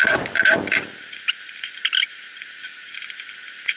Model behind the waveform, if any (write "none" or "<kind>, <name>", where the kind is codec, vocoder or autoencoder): none